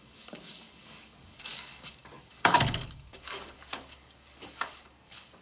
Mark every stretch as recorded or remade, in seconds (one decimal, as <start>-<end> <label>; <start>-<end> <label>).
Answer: 0.0-5.4 remade